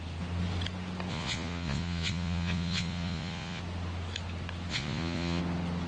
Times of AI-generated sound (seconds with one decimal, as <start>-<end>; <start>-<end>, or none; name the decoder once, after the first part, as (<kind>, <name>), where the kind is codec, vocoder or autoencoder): 1.1-3.6 (vocoder, Vocos); 4.7-5.4